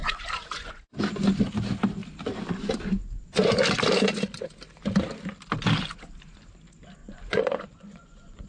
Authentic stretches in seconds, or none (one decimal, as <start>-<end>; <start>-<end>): 1.0-7.0